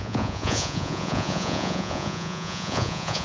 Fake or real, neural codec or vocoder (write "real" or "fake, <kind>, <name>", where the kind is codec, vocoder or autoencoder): fake, vocoder, Vocos